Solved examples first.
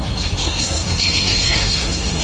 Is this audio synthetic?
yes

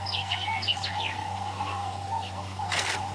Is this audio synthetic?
yes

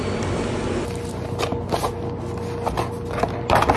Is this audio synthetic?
no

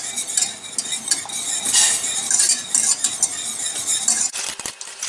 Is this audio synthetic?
no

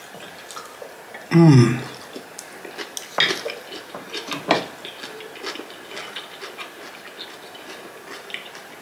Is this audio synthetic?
no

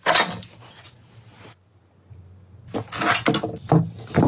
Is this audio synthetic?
no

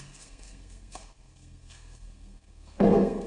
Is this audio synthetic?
yes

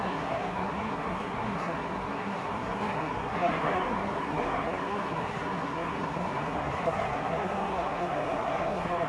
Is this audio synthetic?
yes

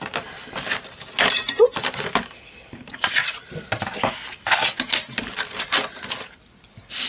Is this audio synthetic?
no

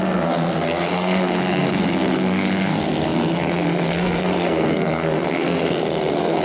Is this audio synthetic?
yes